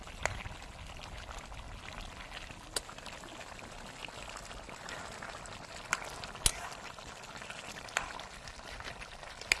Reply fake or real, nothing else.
real